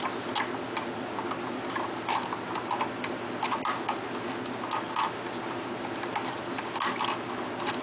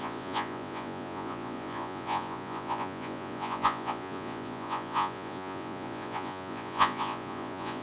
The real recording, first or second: first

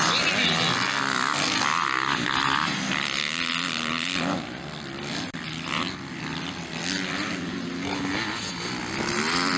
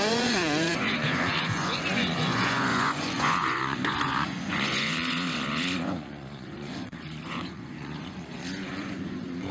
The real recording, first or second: first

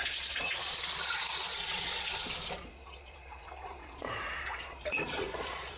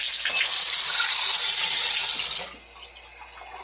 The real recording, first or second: second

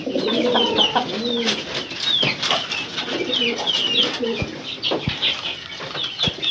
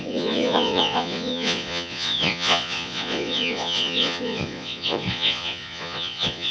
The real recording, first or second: first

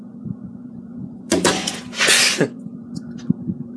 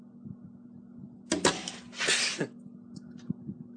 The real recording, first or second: second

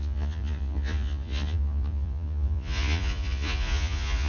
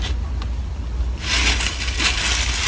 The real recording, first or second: second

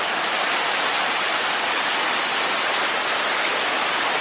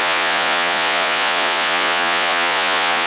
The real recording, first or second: first